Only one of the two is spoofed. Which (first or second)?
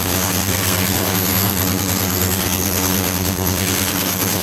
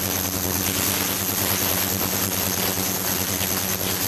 first